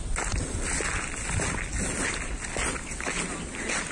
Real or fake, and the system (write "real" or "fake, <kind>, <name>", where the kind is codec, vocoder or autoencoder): real